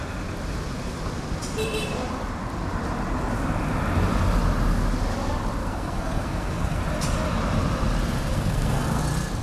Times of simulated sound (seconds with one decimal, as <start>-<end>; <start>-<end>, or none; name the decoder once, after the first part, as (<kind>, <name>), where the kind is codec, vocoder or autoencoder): 5.6-6.8 (codec, SNAC); 8.3-9.0